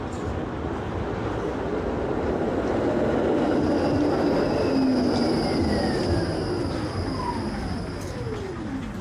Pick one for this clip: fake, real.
real